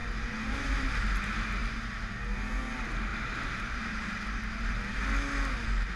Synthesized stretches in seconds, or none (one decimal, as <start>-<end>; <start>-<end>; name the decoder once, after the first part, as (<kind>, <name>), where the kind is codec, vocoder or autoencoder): 0.0-1.2 (vocoder, BigVGAN v2); 3.1-4.7